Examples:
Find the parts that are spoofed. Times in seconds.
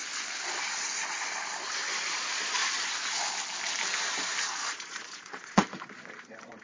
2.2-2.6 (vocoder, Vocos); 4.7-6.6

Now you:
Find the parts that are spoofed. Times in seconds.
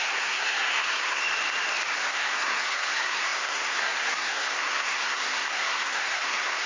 0.0-1.2 (codec, SNAC); 2.1-6.7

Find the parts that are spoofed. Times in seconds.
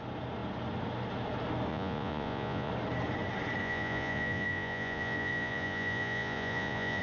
1.7-2.7 (vocoder, Vocos); 3.6-7.0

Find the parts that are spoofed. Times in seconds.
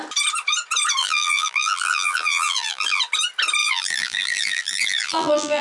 1.0-3.0 (vocoder, BigVGAN v2); 3.6-5.6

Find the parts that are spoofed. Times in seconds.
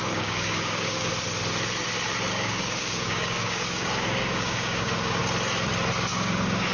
0.0-1.1 (codec, DAC); 2.3-5.2; 6.1-6.7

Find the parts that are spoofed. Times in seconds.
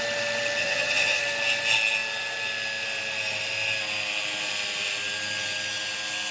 0.6-1.2 (vocoder, HiFi-GAN)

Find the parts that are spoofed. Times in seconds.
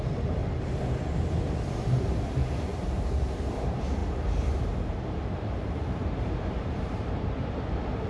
0.0-0.4 (vocoder, BigVGAN v2); 2.1-8.1